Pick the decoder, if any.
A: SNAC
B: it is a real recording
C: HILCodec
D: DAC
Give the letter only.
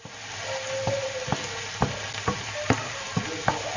B